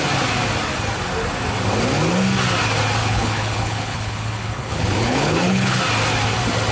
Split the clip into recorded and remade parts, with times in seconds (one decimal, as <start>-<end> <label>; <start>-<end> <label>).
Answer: 0.0-3.0 recorded; 3.0-5.8 remade; 5.8-6.7 recorded